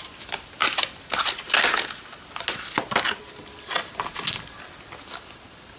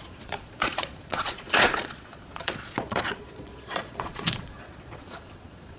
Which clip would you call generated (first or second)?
second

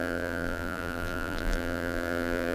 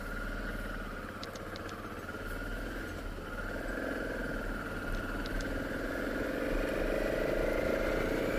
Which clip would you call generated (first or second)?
first